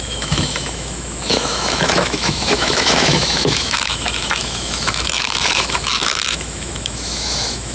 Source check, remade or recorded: remade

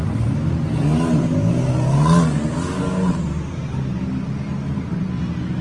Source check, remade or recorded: recorded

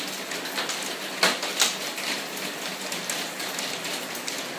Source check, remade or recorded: recorded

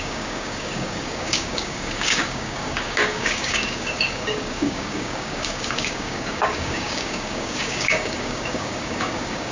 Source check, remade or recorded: remade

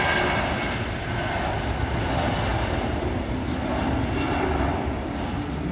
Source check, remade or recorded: recorded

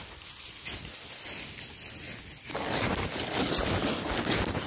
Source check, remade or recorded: recorded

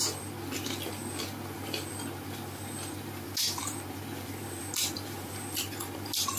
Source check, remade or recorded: recorded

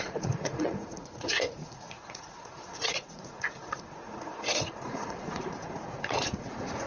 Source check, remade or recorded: remade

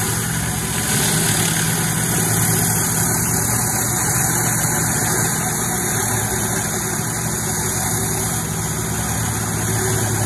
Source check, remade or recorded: recorded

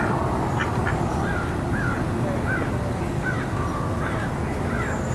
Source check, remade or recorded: recorded